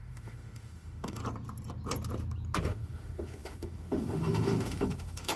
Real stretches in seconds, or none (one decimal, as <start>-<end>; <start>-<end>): 1.2-2.6